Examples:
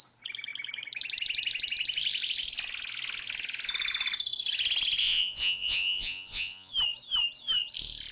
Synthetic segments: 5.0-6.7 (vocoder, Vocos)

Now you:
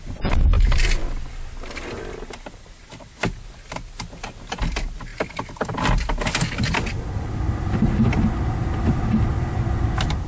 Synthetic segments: none

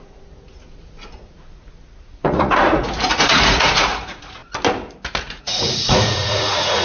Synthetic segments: 0.0-4.4 (vocoder, Vocos); 5.2-6.8

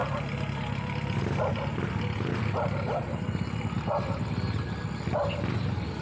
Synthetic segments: none

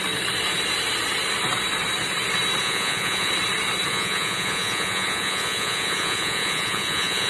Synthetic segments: 2.6-3.3 (vocoder, Vocos); 3.9-7.3

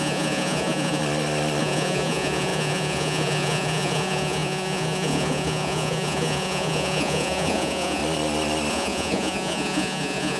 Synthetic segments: 0.0-1.0 (vocoder, Vocos); 1.6-8.0; 8.7-10.4

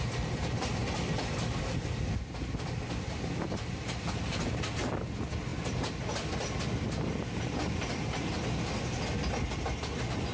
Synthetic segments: none

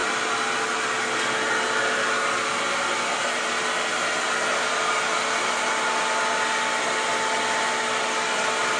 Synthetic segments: none